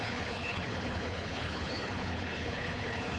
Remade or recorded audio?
remade